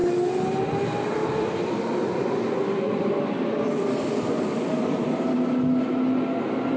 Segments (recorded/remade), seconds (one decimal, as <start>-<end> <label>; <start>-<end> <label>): 0.0-1.2 recorded; 1.2-5.3 remade; 5.3-6.8 recorded